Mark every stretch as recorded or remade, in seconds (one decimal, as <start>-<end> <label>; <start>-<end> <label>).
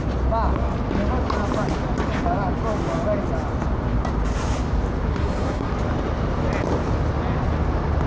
0.0-5.1 recorded; 5.1-5.7 remade; 5.7-8.1 recorded